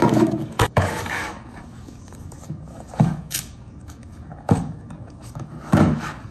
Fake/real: fake